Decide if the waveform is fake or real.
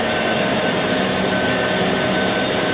real